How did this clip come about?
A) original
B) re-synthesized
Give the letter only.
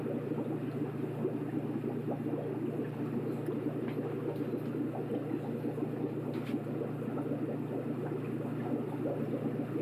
A